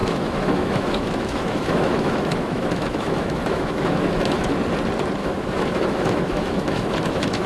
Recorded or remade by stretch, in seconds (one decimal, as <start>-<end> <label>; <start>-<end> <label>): 0.0-4.5 remade; 4.5-5.2 recorded; 5.2-7.5 remade